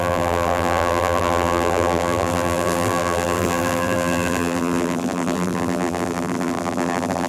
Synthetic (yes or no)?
yes